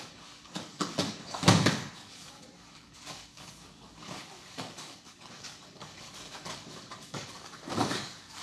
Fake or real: fake